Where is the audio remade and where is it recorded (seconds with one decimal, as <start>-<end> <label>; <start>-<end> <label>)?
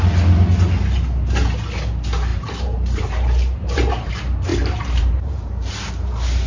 0.0-2.3 recorded; 2.3-4.1 remade; 4.1-4.5 recorded; 4.5-5.9 remade; 5.9-6.5 recorded